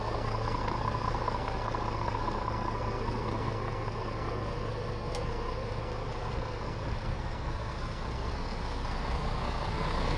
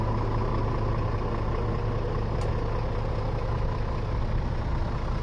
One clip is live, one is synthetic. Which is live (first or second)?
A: second